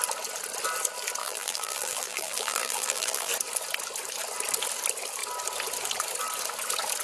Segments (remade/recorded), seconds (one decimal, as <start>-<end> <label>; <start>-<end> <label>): 0.0-1.2 recorded; 1.2-3.3 remade; 3.3-7.0 recorded